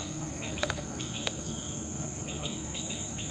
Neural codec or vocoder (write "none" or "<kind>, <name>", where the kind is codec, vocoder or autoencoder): codec, SNAC